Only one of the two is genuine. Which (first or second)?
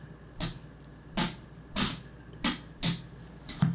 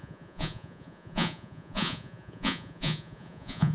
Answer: first